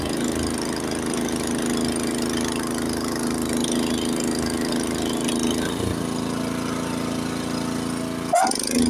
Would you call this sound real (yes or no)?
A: yes